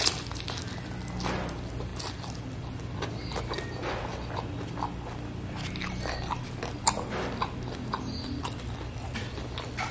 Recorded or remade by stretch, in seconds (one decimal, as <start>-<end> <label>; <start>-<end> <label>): 0.0-9.9 recorded